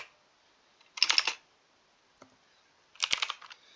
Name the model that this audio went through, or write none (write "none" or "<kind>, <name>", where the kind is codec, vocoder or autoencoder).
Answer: none